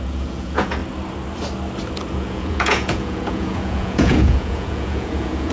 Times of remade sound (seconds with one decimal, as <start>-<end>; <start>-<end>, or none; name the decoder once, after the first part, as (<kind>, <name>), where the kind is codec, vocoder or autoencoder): 0.0-0.8 (vocoder, Vocos); 2.1-5.5